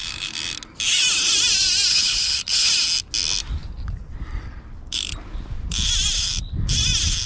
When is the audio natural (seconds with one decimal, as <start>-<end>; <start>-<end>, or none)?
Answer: 0.0-1.9; 2.7-7.3